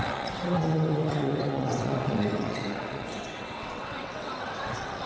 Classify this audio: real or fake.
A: fake